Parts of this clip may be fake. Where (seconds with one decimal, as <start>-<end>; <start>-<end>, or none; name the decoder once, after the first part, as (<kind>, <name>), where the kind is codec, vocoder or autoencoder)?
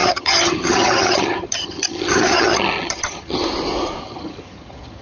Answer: 0.0-3.4 (vocoder, HiFi-GAN); 4.0-5.0